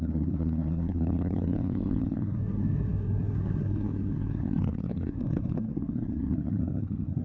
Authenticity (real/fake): fake